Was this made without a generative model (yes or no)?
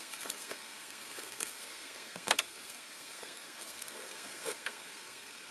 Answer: no